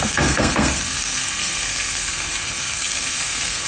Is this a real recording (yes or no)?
no